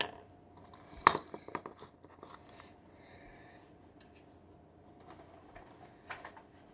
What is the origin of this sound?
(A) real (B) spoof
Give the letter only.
A